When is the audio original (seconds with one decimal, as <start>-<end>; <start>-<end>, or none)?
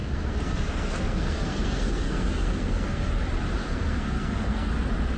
3.1-3.6; 4.7-5.2